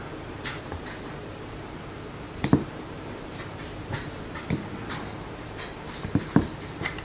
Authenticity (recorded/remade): remade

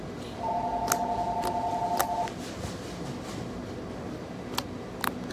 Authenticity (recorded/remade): recorded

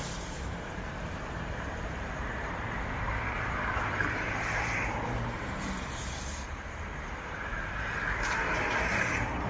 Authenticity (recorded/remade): remade